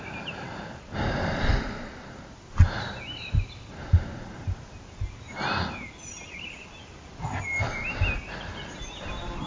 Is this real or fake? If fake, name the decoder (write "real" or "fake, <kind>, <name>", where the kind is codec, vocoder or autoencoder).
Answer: real